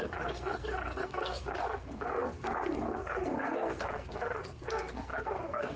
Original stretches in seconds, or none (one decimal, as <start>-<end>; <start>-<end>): none